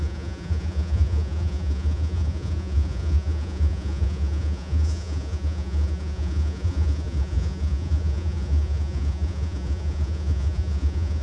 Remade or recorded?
remade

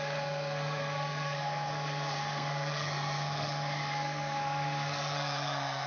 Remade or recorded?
remade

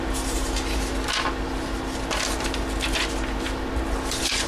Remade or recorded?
recorded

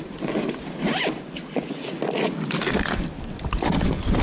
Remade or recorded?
recorded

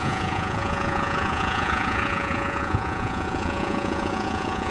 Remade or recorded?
remade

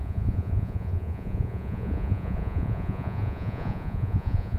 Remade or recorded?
remade